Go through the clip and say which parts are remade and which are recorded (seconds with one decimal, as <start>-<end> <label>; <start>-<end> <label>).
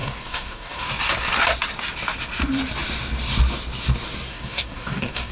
0.0-0.9 remade; 0.9-4.3 recorded; 4.3-5.3 remade